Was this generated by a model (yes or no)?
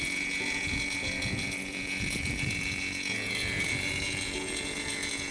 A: yes